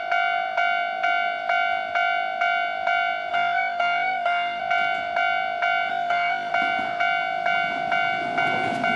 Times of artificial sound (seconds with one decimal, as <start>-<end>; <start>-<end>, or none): 3.3-4.6; 5.9-6.5